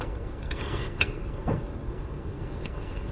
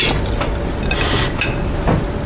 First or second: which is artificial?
first